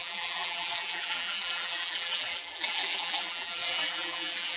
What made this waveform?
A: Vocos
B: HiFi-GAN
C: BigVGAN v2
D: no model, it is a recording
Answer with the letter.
C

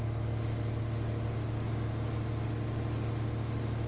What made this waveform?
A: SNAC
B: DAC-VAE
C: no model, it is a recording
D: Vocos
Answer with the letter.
C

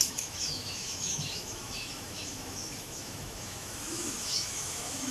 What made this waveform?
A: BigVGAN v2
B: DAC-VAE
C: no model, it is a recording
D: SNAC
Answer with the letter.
B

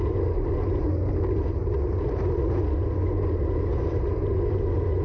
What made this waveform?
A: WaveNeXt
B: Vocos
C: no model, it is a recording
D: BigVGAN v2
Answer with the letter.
C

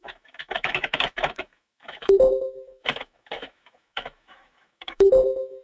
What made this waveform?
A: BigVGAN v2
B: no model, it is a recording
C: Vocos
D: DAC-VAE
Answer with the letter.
D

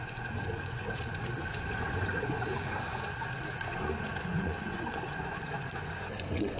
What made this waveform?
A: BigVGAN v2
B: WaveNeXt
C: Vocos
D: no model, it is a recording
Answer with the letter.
C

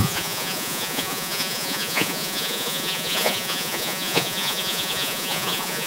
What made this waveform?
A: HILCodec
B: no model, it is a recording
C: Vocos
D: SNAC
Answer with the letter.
C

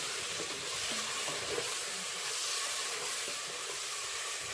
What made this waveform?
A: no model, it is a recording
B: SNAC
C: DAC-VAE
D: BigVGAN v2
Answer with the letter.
D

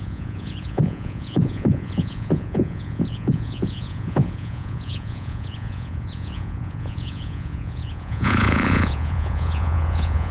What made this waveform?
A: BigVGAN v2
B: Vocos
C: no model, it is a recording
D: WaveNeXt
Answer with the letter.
B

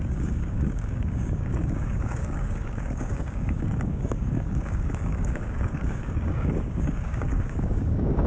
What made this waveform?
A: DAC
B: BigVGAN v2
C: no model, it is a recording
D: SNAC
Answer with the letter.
A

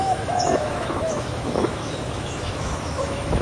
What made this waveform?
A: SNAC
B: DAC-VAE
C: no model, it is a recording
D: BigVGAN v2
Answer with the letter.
B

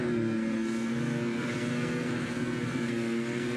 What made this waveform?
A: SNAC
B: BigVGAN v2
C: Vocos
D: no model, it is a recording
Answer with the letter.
A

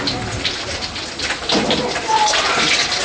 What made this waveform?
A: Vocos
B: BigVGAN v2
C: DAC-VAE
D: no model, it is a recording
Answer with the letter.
D